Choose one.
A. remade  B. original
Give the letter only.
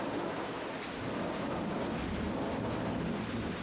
B